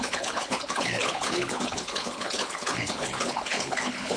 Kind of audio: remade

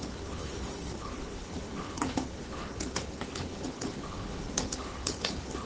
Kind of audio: remade